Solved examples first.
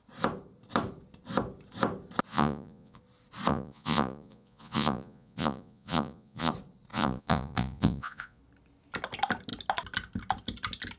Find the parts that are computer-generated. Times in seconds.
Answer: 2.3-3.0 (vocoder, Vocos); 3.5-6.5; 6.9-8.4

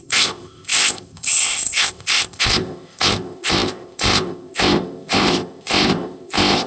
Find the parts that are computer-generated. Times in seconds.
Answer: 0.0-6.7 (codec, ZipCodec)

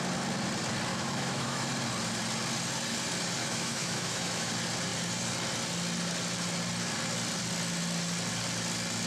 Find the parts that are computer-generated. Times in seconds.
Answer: 0.9-1.7 (autoencoder, DAC-VAE); 3.4-4.5